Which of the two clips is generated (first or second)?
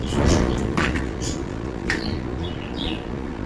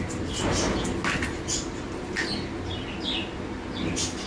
first